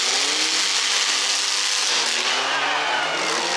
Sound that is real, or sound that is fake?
real